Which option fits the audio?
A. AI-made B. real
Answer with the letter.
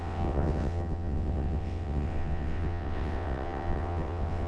A